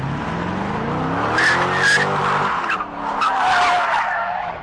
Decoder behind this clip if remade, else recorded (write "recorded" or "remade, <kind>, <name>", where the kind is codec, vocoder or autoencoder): recorded